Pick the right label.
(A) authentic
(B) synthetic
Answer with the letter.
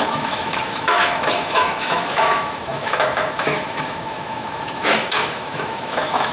B